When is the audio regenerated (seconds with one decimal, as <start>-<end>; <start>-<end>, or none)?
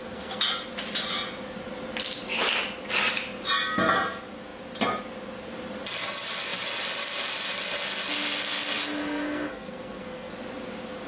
0.0-0.5; 9.0-10.3